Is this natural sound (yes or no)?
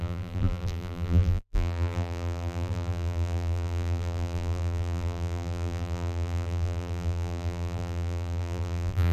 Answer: no